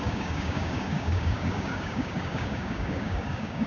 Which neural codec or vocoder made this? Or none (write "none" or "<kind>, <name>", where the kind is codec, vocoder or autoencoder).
codec, DAC